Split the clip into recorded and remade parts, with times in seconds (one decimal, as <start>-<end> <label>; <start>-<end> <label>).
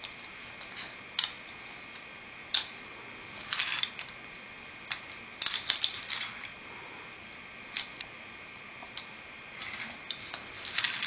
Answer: 0.0-11.1 recorded